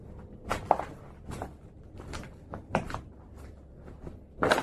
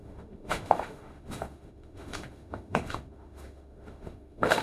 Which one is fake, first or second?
second